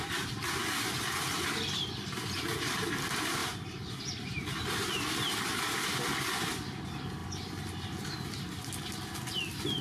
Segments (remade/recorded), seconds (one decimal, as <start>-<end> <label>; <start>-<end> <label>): 0.0-3.4 recorded; 3.4-4.4 remade; 4.4-7.2 recorded; 7.2-8.0 remade; 8.0-9.8 recorded